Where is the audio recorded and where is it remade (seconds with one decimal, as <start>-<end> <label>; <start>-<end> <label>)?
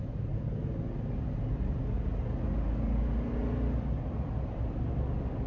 0.0-5.5 recorded